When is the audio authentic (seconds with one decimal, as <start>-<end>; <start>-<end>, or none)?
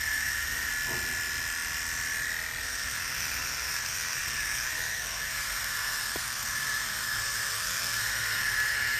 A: 0.7-2.6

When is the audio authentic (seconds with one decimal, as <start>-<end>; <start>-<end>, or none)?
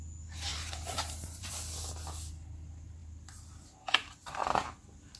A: 0.0-0.5; 1.5-5.2